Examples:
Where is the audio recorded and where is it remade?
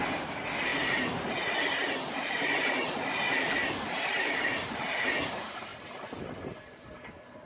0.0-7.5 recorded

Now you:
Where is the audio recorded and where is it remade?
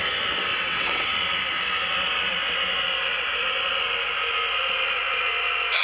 0.0-0.5 recorded; 0.5-1.1 remade; 1.1-5.8 recorded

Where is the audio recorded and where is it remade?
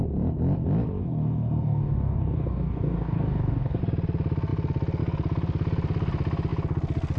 0.0-1.0 recorded; 1.0-3.8 remade; 3.8-7.2 recorded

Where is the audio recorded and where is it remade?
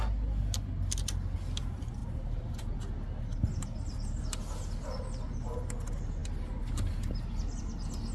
0.0-8.1 recorded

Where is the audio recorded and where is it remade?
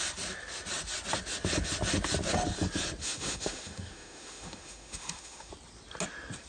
0.0-3.0 recorded; 3.0-5.5 remade; 5.5-6.5 recorded